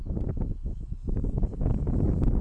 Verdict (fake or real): real